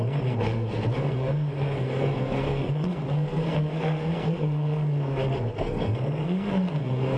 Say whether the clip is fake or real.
fake